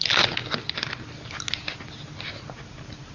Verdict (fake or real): real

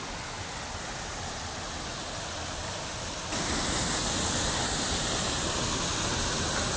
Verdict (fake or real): real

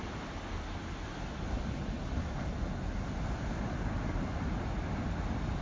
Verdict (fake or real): real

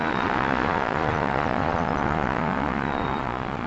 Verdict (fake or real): fake